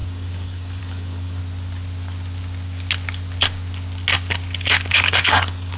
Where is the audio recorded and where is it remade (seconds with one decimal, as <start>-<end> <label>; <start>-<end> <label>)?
0.0-1.4 remade; 1.4-4.9 recorded; 4.9-5.8 remade